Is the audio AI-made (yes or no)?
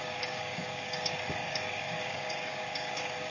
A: yes